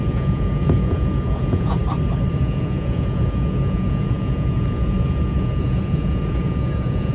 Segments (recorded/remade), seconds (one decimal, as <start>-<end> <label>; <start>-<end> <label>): 0.0-1.8 remade; 1.8-2.4 recorded; 2.4-7.1 remade